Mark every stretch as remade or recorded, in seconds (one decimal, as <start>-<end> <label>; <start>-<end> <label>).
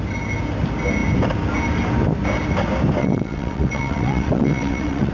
0.0-3.0 recorded; 3.0-5.1 remade